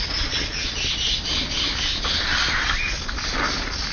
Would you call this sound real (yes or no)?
yes